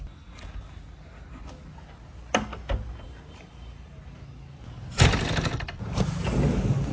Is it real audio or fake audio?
real